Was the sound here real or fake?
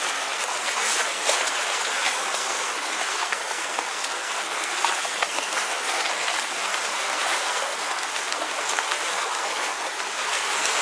fake